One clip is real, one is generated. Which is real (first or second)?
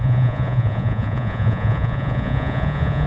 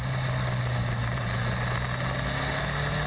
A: second